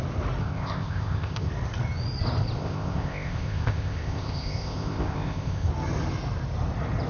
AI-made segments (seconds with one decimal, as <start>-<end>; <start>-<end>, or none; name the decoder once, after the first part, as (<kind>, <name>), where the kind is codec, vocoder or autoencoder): 0.4-1.5 (codec, ZipCodec); 2.6-5.7